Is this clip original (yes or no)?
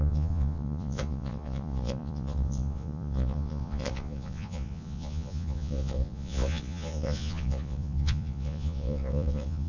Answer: no